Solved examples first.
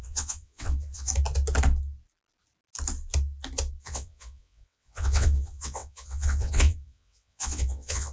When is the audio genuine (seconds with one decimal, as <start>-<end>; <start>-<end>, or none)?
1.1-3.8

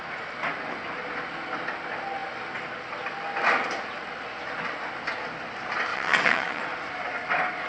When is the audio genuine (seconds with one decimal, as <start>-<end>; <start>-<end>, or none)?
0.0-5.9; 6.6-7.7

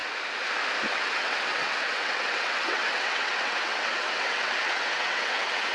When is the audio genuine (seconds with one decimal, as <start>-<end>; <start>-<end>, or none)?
0.0-0.9